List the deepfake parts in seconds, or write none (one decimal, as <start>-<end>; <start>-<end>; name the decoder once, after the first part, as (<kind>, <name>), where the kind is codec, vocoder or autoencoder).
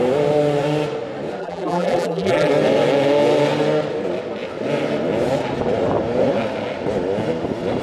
1.4-2.5 (vocoder, BigVGAN v2)